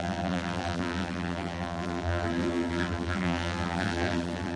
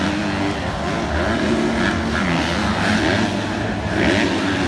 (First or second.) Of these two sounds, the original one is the second